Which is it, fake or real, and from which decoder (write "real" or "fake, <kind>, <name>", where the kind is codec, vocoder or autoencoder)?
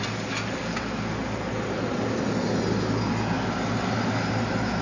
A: real